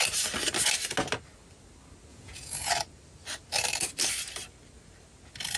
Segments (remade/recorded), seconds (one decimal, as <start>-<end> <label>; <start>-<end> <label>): 0.0-2.1 recorded; 2.1-2.7 remade; 2.7-5.6 recorded